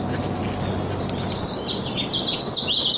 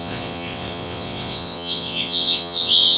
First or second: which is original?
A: first